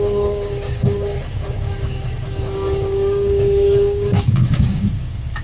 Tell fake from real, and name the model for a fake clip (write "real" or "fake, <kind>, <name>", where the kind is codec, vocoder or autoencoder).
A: fake, codec, DAC